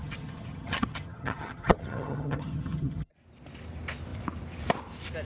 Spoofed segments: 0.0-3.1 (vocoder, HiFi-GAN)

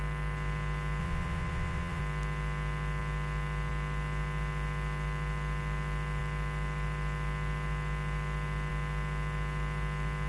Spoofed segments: 1.0-2.0 (vocoder, Vocos)

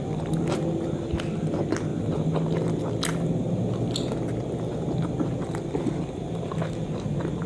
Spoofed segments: 1.9-3.5 (vocoder, BigVGAN v2)

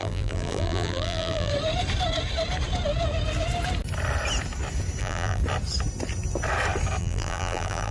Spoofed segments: 0.0-1.5 (vocoder, BigVGAN v2); 5.0-5.4; 7.0-7.9